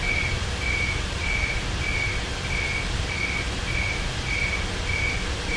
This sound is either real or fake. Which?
real